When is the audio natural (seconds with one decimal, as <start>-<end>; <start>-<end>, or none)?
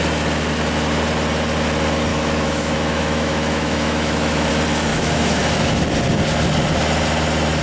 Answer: 0.0-2.1; 4.5-4.9; 5.4-7.6